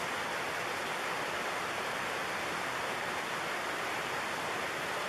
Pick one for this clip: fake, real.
real